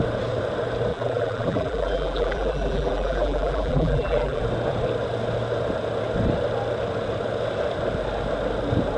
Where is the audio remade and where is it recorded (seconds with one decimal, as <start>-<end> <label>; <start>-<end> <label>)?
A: 0.0-0.9 recorded; 0.9-4.4 remade; 4.4-9.0 recorded

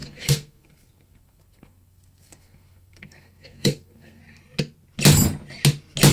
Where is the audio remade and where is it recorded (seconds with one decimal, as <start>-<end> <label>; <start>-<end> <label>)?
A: 0.0-4.2 remade; 4.2-6.1 recorded

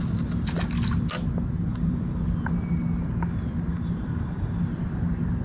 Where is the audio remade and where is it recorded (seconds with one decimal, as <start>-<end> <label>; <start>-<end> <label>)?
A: 0.0-1.7 recorded; 1.7-2.2 remade; 2.2-3.7 recorded; 3.7-4.6 remade; 4.6-5.4 recorded

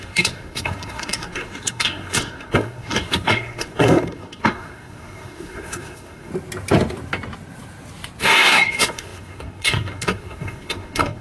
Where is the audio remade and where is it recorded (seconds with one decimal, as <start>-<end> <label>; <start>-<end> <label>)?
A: 0.0-6.3 remade; 6.3-8.2 recorded; 8.2-11.2 remade

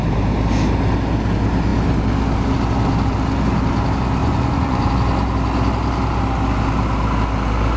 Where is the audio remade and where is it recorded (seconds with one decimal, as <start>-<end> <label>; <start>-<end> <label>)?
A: 0.0-4.2 recorded; 4.2-4.9 remade; 4.9-7.8 recorded